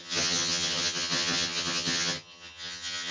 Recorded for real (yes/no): no